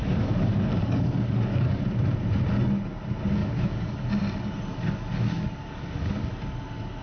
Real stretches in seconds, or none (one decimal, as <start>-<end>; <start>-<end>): 1.8-3.4; 4.0-4.7; 6.3-7.0